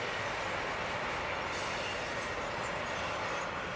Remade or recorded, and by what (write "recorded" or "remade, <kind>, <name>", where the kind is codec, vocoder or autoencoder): recorded